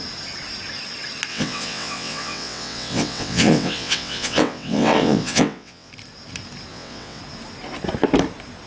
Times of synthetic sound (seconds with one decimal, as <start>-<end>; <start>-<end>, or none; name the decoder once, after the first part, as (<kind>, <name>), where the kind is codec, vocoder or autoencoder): 1.3-5.9 (vocoder, WaveNeXt); 6.7-7.2